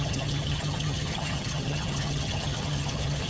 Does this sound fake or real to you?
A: fake